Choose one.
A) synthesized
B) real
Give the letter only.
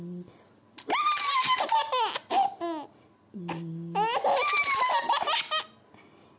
B